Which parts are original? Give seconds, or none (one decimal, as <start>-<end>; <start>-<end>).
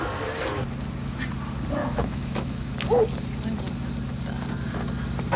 0.0-1.8; 2.7-5.4